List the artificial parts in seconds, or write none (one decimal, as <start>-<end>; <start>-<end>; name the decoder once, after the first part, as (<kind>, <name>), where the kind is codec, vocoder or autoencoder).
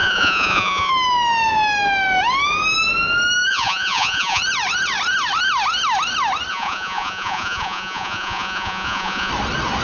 0.0-0.9 (vocoder, Vocos); 3.5-4.4; 6.5-9.3